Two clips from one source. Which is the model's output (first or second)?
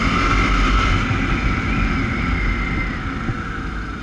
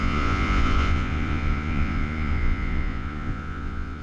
second